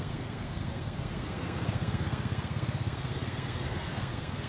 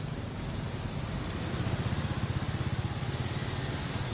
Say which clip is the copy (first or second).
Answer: first